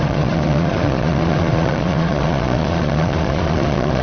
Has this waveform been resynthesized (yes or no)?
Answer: yes